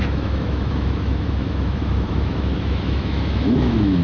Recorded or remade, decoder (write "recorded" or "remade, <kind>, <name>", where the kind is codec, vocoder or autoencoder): remade, autoencoder, DAC-VAE